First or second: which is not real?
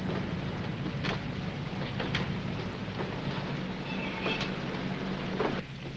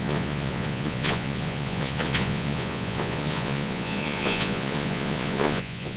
second